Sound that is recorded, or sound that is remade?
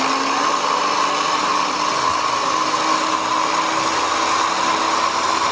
recorded